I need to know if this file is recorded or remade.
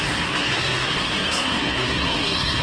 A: remade